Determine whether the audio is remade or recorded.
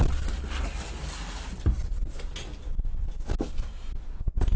recorded